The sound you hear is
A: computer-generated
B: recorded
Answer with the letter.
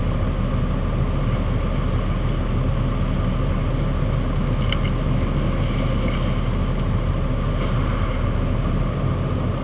B